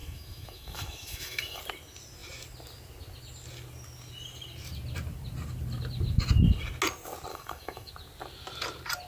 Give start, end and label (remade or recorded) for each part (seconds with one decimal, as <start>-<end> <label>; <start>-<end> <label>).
0.0-1.6 remade; 1.6-7.3 recorded; 7.3-7.9 remade; 7.9-9.1 recorded